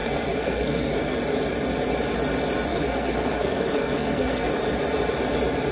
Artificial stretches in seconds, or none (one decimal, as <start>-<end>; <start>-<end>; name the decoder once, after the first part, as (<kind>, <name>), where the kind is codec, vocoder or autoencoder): 0.0-1.2 (codec, SNAC); 2.7-4.5